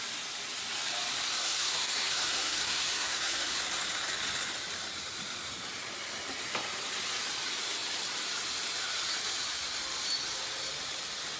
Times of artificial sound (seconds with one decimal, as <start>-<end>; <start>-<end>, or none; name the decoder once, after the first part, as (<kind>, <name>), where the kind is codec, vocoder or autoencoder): 1.4-3.6 (codec, SNAC)